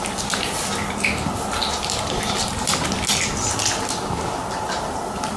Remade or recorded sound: recorded